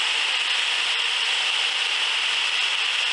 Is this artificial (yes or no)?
no